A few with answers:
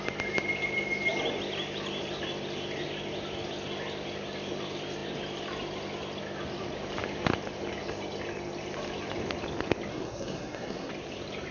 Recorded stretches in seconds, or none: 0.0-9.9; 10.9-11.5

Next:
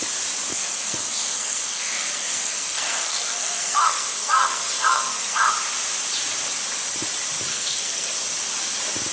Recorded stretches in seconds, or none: 0.0-0.5; 5.5-7.5; 8.1-9.1

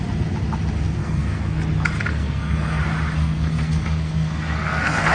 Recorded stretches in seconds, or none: 0.0-1.0; 1.6-2.1; 2.8-3.2

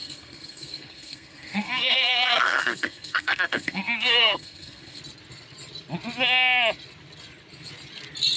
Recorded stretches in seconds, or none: 5.0-8.4

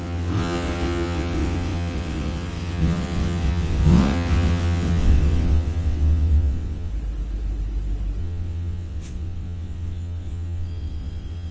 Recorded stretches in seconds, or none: 6.9-8.2

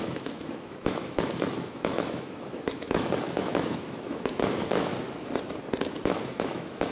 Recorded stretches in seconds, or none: 4.9-5.8

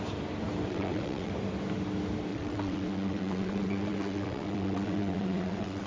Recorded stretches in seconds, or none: 0.0-0.7; 1.3-2.3